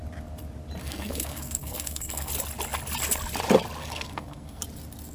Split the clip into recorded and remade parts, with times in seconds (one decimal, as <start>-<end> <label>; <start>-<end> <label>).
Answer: 0.0-0.8 recorded; 0.8-2.3 remade; 2.3-3.8 recorded; 3.8-4.6 remade; 4.6-5.1 recorded